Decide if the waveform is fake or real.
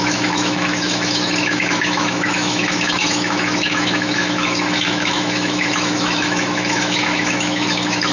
fake